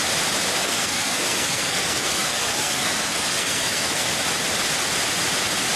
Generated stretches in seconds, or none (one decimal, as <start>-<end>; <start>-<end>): 0.6-4.1